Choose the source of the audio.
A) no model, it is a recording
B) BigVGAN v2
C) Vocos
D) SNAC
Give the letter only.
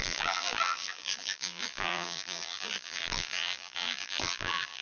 B